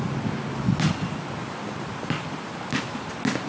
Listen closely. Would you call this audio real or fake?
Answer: real